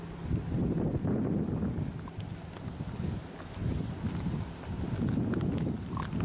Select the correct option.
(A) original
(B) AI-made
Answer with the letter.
A